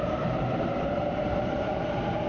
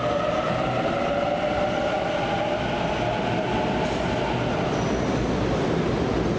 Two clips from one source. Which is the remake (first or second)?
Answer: first